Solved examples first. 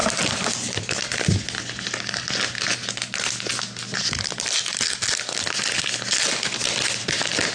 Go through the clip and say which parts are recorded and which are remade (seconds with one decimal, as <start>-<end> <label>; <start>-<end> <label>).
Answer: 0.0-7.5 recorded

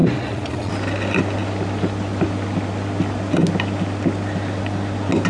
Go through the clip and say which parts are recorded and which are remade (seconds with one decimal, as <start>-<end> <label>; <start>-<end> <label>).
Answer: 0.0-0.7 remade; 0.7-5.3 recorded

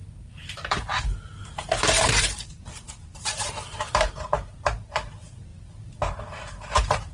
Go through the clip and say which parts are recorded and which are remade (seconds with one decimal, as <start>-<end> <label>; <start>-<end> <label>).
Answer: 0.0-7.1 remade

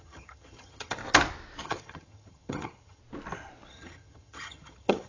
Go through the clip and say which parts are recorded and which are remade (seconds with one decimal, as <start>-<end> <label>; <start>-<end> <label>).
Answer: 0.0-1.0 remade; 1.0-1.6 recorded; 1.6-3.0 remade; 3.0-3.7 recorded; 3.7-5.1 remade